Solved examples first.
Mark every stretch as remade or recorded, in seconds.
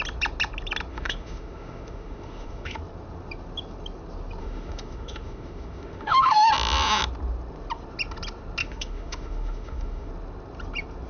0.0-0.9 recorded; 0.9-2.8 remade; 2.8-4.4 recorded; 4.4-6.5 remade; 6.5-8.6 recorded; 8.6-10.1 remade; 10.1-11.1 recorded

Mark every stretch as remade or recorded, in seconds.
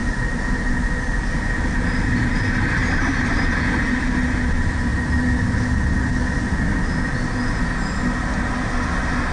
0.0-2.8 recorded; 2.8-3.5 remade; 3.5-9.3 recorded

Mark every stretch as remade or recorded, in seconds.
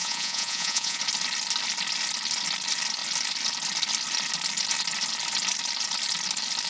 0.0-1.0 remade; 1.0-6.7 recorded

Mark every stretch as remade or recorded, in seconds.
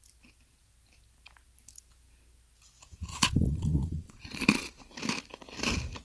0.0-3.1 recorded; 3.1-4.8 remade; 4.8-6.0 recorded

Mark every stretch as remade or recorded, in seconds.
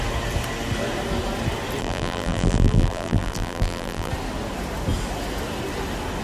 0.0-1.8 recorded; 1.8-4.1 remade; 4.1-6.2 recorded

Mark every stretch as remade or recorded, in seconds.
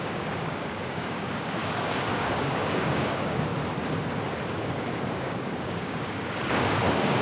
0.0-3.5 remade; 3.5-4.5 recorded; 4.5-7.2 remade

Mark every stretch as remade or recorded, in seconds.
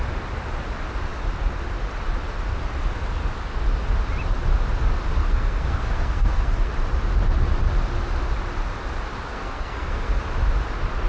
0.0-5.2 recorded; 5.2-6.7 remade; 6.7-9.3 recorded; 9.3-10.2 remade; 10.2-11.1 recorded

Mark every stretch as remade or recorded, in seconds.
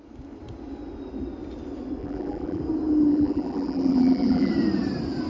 0.0-2.0 recorded; 2.0-2.6 remade; 2.6-3.1 recorded; 3.1-4.5 remade; 4.5-5.3 recorded